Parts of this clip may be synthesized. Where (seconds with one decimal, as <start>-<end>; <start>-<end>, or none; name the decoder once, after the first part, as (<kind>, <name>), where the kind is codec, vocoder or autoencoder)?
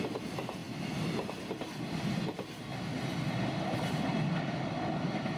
none